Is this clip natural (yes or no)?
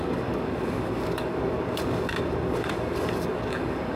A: no